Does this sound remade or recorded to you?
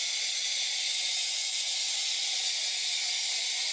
recorded